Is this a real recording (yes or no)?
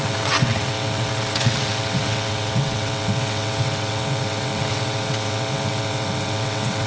no